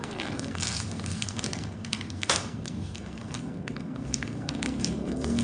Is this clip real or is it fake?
fake